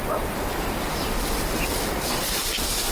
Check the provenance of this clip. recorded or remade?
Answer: recorded